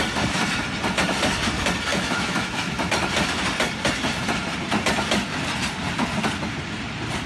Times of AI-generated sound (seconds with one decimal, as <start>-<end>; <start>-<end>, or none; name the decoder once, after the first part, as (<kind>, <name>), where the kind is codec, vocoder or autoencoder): 1.9-2.9 (autoencoder, DAC-VAE)